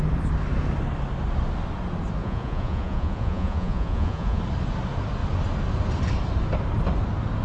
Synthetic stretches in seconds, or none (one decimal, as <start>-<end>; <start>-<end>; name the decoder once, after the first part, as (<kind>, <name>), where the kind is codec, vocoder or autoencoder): 2.2-4.4 (vocoder, Vocos)